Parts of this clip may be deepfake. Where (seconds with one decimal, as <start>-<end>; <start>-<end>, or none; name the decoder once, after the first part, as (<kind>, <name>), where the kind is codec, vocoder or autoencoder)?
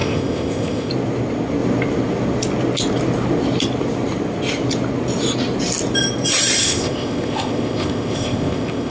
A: 0.0-0.9 (codec, ZipCodec); 6.6-8.9